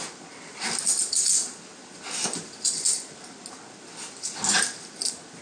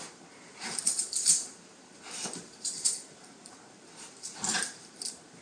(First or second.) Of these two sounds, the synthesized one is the second